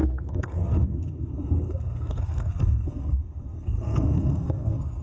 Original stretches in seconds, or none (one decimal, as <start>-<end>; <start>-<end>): none